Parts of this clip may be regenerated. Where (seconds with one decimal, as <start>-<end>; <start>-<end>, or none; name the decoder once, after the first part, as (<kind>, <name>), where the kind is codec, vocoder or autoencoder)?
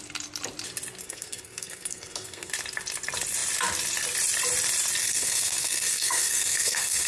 1.0-2.5 (codec, SNAC); 5.0-7.1